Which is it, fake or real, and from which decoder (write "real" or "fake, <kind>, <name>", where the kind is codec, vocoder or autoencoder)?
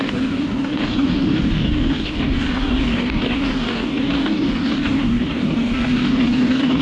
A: fake, codec, DAC